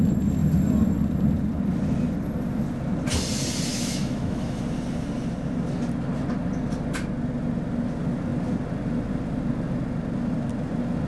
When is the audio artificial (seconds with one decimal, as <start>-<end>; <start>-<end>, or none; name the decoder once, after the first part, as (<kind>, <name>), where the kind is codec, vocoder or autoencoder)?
3.7-4.6 (autoencoder, DAC-VAE)